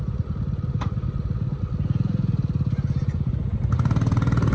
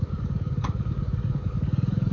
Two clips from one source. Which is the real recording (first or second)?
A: first